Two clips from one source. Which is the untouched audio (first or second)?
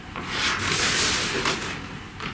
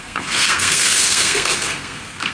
first